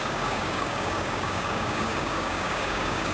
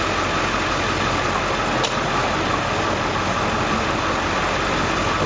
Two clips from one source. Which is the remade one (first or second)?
first